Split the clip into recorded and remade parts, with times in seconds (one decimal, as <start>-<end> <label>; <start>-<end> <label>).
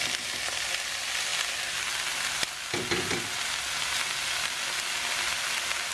0.0-5.9 recorded